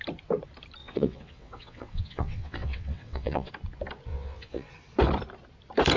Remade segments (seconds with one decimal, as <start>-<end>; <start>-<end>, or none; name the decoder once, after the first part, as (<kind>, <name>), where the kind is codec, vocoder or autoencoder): 0.8-3.5 (vocoder, WaveNeXt); 4.1-4.7